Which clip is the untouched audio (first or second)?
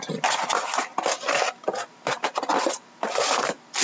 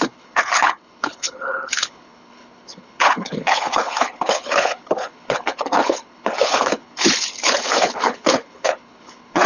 first